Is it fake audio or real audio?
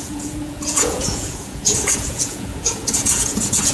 fake